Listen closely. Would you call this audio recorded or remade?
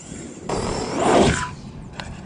remade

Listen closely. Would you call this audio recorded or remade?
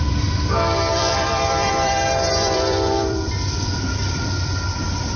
remade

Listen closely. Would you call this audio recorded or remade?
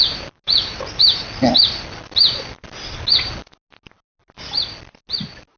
recorded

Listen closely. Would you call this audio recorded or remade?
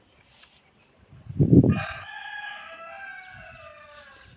recorded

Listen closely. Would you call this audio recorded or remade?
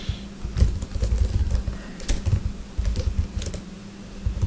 recorded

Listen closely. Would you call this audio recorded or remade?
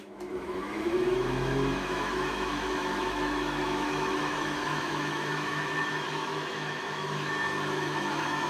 remade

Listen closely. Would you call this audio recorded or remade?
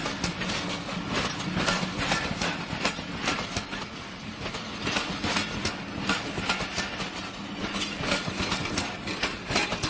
recorded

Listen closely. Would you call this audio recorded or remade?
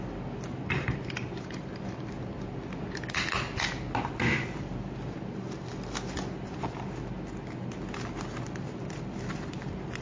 recorded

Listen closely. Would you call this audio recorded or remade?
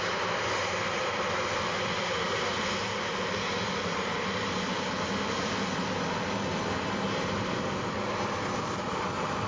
recorded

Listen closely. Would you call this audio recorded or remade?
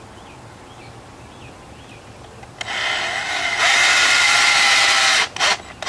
recorded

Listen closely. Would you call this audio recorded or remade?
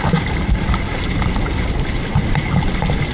recorded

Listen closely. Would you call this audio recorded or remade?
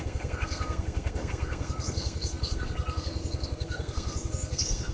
remade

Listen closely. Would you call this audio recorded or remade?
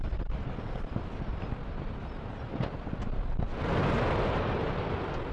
recorded